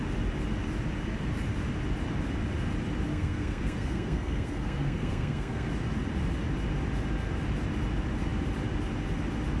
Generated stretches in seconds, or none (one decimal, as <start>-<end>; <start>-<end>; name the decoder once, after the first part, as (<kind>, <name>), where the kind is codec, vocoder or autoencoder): 3.1-5.7 (codec, SNAC)